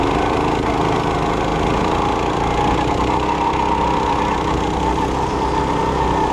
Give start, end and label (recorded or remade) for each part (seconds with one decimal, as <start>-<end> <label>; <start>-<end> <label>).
0.0-6.3 recorded